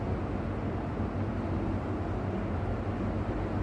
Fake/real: real